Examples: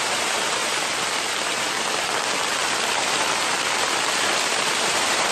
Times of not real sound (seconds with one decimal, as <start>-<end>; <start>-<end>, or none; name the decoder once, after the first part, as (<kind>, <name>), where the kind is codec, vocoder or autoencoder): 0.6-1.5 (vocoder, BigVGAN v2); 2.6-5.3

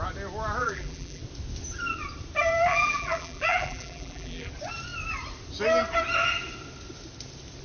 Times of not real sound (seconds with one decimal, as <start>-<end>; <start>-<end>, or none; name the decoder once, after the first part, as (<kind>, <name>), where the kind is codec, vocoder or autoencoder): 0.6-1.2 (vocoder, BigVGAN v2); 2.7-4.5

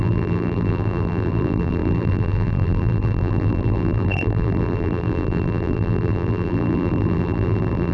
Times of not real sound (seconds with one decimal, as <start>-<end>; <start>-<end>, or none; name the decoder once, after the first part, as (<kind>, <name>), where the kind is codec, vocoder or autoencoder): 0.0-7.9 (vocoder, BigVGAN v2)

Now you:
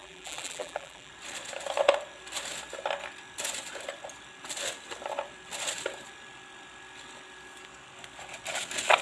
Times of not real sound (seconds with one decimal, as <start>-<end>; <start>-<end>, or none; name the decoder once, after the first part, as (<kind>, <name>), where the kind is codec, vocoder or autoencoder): 0.0-1.1 (vocoder, BigVGAN v2)